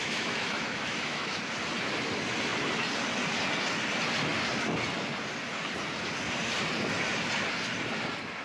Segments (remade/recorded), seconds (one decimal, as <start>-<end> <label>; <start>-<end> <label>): 0.0-1.4 remade; 1.4-8.4 recorded